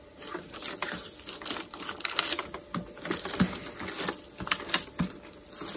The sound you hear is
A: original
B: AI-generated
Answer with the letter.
A